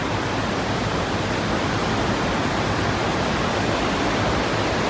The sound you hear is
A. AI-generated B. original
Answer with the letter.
B